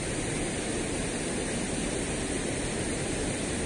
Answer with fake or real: real